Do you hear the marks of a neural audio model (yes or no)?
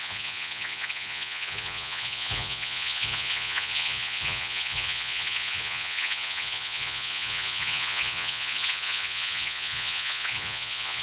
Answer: yes